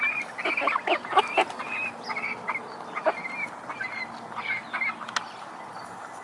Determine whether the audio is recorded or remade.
recorded